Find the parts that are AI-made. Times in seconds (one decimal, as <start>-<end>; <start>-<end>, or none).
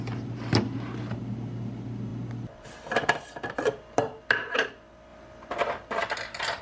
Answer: none